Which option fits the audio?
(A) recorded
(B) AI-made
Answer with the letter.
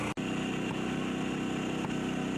A